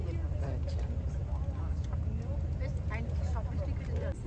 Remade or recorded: recorded